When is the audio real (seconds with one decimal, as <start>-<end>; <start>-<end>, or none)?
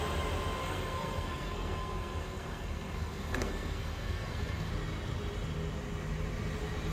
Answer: 0.0-0.6; 4.7-6.9